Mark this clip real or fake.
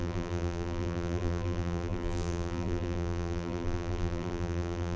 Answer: fake